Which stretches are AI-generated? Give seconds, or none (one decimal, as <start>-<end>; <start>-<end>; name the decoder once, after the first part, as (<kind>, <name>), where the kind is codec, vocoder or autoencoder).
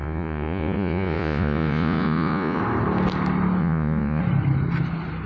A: 0.0-2.6 (vocoder, Vocos); 3.6-4.2